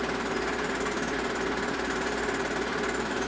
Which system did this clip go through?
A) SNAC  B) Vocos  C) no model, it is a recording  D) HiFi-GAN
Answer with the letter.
C